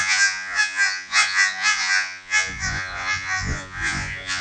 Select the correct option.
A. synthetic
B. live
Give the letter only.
A